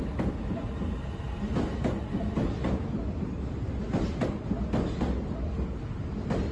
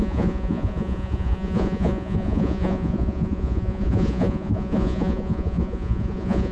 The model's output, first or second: second